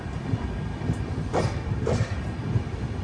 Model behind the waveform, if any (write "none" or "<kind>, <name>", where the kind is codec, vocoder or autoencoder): vocoder, BigVGAN v2